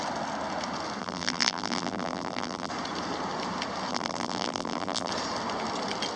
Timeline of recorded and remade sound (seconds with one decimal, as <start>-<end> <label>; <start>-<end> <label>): 0.0-1.0 recorded; 1.0-2.7 remade; 2.7-3.9 recorded; 3.9-5.1 remade; 5.1-6.2 recorded